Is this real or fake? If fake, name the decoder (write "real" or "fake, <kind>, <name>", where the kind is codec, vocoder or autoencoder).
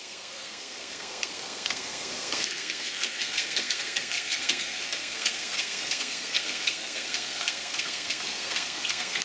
fake, codec, SNAC